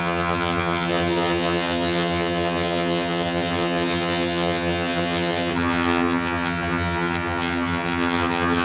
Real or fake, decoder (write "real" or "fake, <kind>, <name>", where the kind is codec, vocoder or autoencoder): fake, vocoder, HiFi-GAN